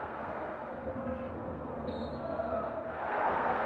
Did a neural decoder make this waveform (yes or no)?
yes